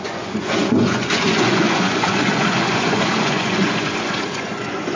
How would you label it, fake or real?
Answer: fake